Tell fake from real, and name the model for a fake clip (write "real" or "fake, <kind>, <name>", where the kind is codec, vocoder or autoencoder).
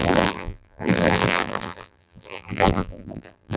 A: fake, vocoder, BigVGAN v2